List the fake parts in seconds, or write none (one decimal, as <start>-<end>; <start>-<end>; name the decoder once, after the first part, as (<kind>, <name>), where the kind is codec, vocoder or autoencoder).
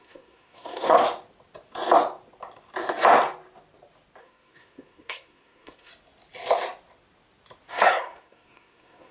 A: 0.0-1.0 (codec, SNAC); 4.2-5.9; 7.7-9.1